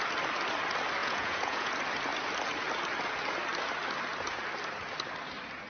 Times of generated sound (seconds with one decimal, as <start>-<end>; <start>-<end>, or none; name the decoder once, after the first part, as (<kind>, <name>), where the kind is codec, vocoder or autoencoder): 1.0-1.7 (vocoder, Vocos)